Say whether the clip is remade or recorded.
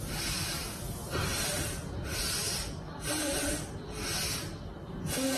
recorded